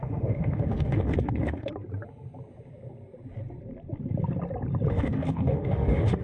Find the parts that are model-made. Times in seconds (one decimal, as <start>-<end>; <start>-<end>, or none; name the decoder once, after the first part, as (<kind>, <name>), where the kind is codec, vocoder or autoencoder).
0.0-1.7 (autoencoder, DAC-VAE); 4.9-6.2